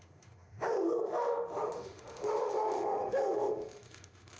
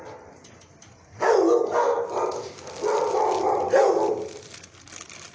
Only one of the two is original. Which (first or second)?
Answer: second